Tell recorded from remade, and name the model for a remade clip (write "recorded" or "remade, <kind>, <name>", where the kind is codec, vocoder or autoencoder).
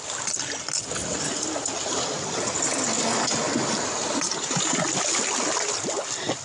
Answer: recorded